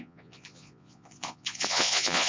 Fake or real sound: fake